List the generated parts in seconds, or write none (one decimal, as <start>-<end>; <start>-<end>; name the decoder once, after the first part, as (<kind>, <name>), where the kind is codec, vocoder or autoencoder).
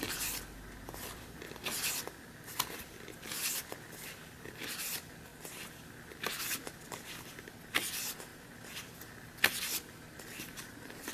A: none